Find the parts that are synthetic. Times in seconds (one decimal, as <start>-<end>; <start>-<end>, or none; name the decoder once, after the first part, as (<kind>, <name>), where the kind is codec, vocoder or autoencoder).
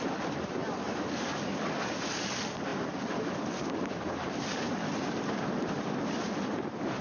none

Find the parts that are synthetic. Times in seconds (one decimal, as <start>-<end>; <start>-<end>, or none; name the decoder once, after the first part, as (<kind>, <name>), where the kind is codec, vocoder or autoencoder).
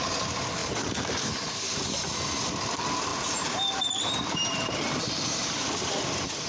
0.6-1.9 (vocoder, BigVGAN v2); 3.1-5.8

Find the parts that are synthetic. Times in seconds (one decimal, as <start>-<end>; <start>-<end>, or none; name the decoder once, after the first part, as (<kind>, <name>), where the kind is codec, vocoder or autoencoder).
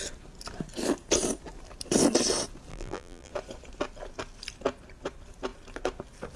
2.7-3.3 (vocoder, BigVGAN v2)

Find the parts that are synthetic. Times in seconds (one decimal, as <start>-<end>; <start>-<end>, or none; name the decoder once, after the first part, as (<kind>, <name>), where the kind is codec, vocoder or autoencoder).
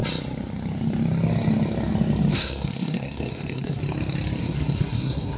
2.3-3.8 (codec, SNAC); 4.4-5.4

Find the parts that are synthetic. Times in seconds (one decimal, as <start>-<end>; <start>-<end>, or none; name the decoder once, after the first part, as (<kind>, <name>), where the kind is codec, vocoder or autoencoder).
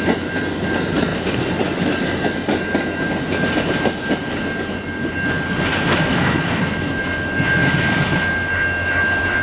5.7-6.6 (autoencoder, DAC-VAE)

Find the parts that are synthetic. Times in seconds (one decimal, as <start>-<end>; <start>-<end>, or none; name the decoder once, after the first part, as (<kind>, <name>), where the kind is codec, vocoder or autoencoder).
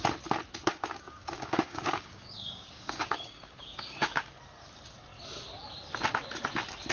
0.7-4.4 (codec, DAC)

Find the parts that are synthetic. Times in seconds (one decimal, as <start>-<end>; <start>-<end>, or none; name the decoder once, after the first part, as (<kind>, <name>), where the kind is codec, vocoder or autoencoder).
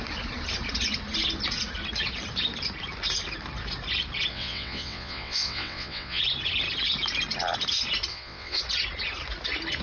4.3-6.2 (vocoder, WaveNeXt); 8.1-8.6